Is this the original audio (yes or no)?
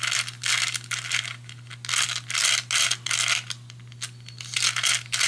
yes